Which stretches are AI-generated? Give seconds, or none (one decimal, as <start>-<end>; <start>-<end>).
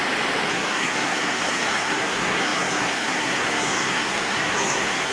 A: 0.5-5.1